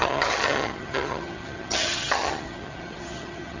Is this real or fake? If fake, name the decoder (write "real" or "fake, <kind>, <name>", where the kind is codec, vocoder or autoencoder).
fake, vocoder, HiFi-GAN